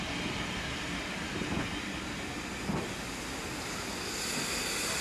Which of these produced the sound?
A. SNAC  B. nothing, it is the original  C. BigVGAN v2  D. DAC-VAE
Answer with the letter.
B